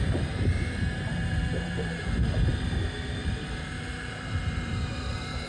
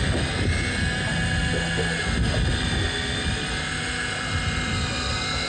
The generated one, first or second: first